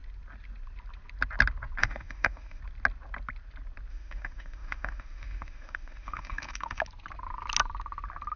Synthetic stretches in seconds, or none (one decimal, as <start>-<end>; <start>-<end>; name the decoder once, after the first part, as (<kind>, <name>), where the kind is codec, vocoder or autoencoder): 1.8-2.6 (autoencoder, DAC-VAE); 3.9-6.8